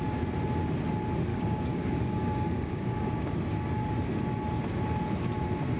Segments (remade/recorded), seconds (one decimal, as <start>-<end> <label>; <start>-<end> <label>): 0.0-1.3 recorded; 1.3-3.3 remade; 3.3-5.8 recorded